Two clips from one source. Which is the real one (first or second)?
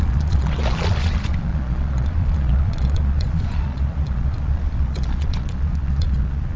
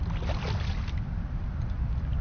second